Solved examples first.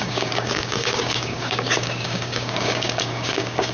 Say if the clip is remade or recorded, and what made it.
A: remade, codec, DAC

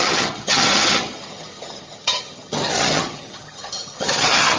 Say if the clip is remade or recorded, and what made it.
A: remade, vocoder, HiFi-GAN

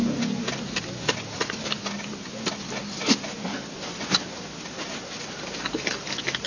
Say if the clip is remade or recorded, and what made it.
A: recorded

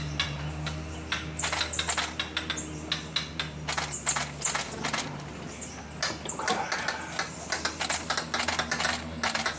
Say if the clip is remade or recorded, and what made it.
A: recorded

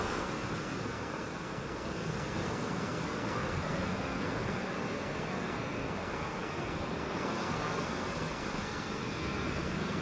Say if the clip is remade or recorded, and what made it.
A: remade, codec, SNAC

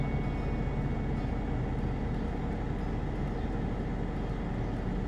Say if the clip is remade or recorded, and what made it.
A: recorded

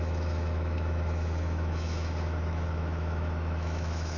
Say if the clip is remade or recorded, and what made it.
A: remade, autoencoder, DAC-VAE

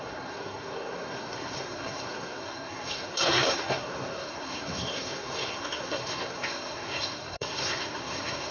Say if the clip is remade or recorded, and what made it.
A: remade, codec, SNAC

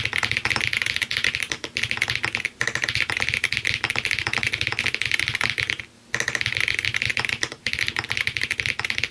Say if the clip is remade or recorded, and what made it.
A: recorded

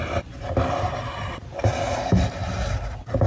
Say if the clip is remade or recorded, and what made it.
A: recorded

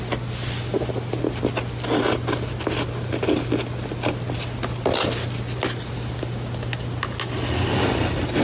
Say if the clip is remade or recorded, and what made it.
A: recorded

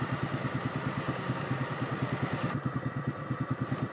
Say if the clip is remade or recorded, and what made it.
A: recorded